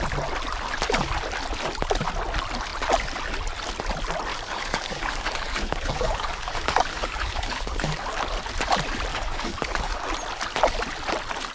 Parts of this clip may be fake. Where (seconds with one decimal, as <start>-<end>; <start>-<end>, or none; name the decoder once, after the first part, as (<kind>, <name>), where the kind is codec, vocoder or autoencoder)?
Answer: 4.3-8.2 (codec, DAC); 9.1-10.1